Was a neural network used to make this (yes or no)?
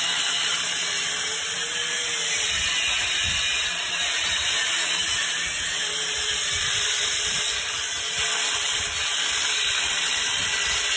yes